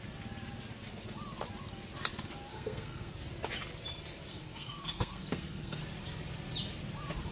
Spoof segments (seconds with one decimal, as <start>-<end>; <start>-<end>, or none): 2.5-3.1; 4.3-5.8